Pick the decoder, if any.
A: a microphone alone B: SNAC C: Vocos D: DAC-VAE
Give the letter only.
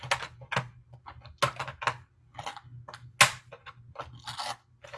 A